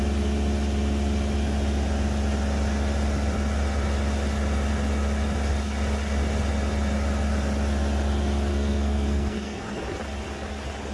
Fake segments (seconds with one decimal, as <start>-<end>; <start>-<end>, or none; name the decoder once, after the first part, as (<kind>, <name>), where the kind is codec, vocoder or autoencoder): 8.5-9.8 (codec, SNAC)